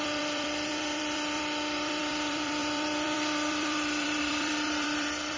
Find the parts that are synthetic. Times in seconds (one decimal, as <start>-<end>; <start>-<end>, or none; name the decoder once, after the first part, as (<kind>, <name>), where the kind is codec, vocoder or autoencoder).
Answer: 0.0-5.4 (vocoder, BigVGAN v2)